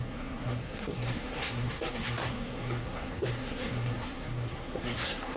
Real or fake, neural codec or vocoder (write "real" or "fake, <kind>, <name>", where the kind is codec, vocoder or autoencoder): fake, codec, SNAC